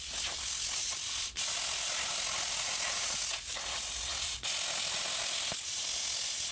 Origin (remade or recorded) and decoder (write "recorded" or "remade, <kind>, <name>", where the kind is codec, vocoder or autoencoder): recorded